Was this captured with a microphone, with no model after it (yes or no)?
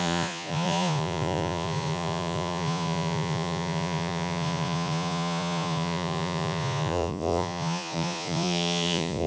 no